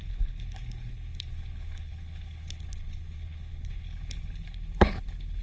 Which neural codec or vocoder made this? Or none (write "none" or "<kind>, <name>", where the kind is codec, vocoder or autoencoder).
codec, HILCodec